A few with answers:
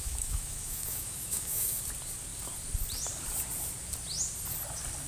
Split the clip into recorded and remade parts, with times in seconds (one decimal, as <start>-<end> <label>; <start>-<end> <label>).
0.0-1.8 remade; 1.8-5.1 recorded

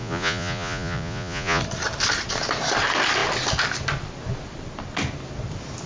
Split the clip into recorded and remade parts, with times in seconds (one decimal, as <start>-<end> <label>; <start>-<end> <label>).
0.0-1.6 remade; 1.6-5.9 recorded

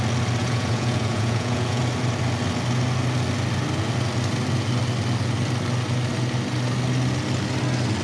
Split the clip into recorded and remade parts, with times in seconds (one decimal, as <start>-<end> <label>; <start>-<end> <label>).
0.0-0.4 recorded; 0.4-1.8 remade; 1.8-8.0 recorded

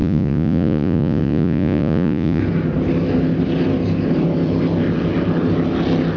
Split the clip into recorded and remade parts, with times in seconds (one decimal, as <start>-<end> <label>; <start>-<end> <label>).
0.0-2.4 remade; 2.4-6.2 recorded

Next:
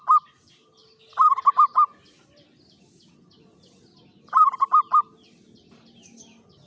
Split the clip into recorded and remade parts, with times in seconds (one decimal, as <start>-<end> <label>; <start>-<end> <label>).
0.0-0.8 remade; 0.8-4.2 recorded; 4.2-6.7 remade

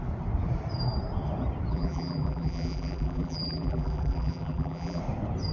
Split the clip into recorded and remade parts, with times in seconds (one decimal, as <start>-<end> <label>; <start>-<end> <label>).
0.0-1.7 recorded; 1.7-5.0 remade; 5.0-5.5 recorded